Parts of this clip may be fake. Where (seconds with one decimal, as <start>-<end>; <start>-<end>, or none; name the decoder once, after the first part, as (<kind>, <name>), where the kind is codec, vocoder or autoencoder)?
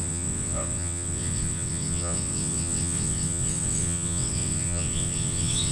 0.0-5.7 (vocoder, WaveNeXt)